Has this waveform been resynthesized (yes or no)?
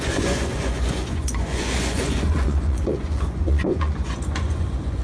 yes